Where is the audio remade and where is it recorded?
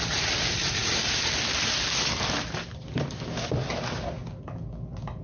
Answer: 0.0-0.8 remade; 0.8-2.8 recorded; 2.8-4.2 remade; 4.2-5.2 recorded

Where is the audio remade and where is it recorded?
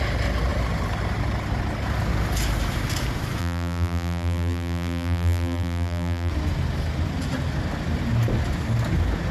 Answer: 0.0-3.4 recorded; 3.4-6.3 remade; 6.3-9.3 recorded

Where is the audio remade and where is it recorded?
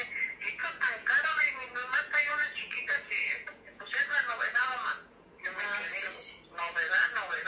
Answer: 0.0-5.8 remade; 5.8-6.6 recorded; 6.6-7.5 remade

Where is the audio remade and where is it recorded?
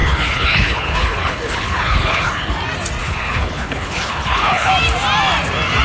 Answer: 0.0-2.5 remade; 2.5-3.0 recorded; 3.0-4.7 remade; 4.7-5.8 recorded